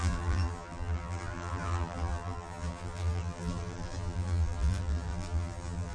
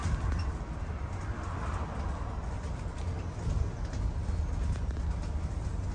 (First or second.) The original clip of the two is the second